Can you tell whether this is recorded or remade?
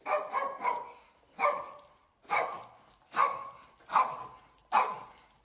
recorded